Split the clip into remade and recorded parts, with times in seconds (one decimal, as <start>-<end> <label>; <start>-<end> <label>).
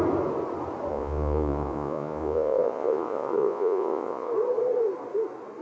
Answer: 0.0-0.9 recorded; 0.9-4.3 remade; 4.3-5.6 recorded